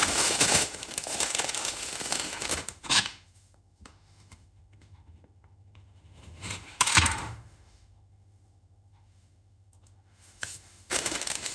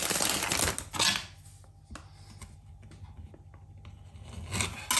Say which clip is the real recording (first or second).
second